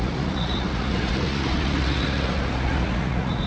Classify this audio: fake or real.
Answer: fake